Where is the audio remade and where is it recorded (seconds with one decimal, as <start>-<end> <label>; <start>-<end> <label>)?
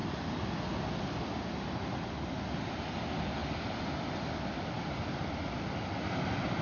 0.0-6.6 recorded